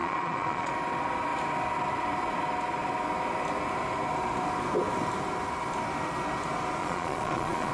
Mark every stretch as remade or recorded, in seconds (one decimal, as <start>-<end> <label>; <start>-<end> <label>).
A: 0.0-0.7 remade; 0.7-6.8 recorded; 6.8-7.7 remade